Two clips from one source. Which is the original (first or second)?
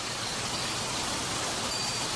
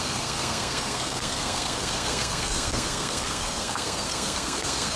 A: first